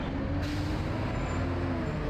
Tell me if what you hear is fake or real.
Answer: real